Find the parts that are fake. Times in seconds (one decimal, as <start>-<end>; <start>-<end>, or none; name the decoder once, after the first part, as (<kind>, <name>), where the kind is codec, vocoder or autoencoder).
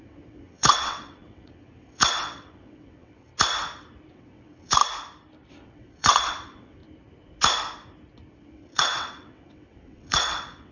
0.0-3.3 (vocoder, WaveNeXt); 4.1-4.8; 5.5-6.8; 8.3-10.7